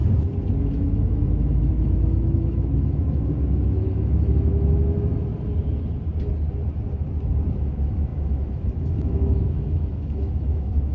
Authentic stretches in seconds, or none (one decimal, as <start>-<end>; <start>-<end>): 0.0-0.6; 5.3-7.5